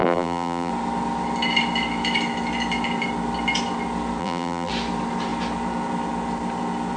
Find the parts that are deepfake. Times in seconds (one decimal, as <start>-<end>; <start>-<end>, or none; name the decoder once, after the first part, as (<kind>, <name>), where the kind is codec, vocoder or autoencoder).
0.0-0.7 (vocoder, BigVGAN v2); 4.2-4.7